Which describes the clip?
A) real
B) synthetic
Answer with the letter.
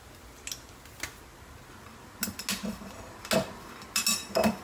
A